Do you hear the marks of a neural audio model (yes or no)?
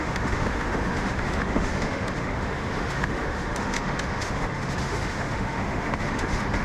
yes